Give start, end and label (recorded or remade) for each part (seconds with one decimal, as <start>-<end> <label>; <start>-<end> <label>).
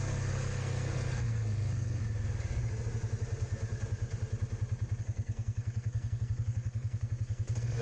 0.0-2.0 remade; 2.0-5.0 recorded; 5.0-7.8 remade